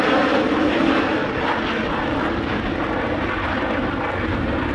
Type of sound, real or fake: real